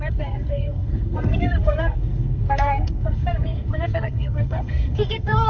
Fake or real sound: fake